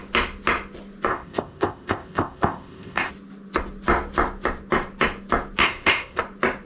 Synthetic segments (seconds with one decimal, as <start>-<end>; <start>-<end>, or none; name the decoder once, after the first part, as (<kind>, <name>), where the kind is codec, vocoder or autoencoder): 1.1-3.1 (codec, ZipCodec); 5.6-6.2